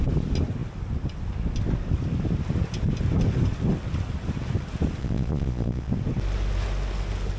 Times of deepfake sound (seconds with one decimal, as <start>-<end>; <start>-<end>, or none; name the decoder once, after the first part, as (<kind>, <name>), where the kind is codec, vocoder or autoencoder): 5.0-5.9 (vocoder, Vocos)